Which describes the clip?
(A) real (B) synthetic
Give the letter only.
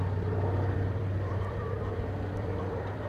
B